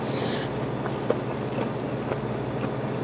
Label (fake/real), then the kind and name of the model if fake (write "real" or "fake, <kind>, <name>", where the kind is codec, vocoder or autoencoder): real